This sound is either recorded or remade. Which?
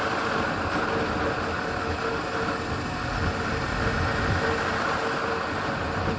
recorded